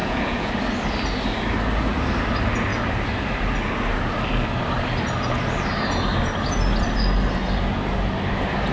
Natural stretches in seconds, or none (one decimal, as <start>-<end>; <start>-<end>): 0.5-8.7